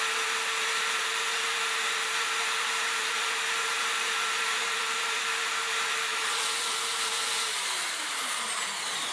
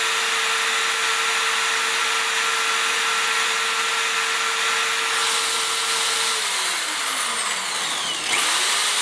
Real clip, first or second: second